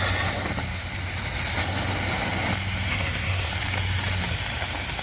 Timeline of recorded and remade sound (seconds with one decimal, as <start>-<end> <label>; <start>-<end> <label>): 0.0-2.9 recorded; 2.9-3.5 remade; 3.5-5.0 recorded